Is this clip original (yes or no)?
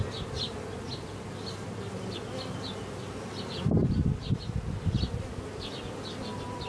yes